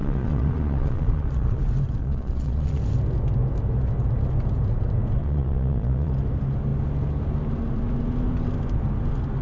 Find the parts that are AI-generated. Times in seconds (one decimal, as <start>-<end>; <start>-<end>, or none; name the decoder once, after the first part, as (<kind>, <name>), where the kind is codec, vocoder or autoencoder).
0.0-1.6 (vocoder, Vocos); 2.0-2.8; 5.2-6.1